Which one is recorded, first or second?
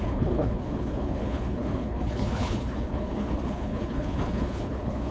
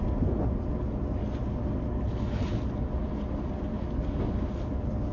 second